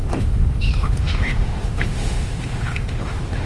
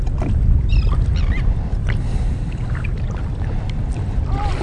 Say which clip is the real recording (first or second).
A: second